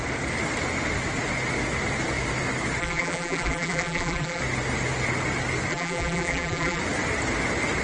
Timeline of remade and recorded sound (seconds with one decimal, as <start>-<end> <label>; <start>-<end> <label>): 0.0-2.8 recorded; 2.8-4.4 remade; 4.4-5.7 recorded; 5.7-6.8 remade; 6.8-7.8 recorded